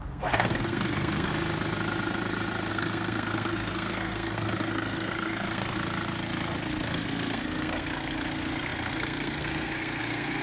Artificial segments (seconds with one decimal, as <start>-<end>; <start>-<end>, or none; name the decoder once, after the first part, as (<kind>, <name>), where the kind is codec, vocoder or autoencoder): 0.0-1.3 (codec, SNAC); 2.7-5.8; 6.6-10.4